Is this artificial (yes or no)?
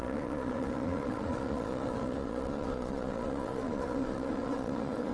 yes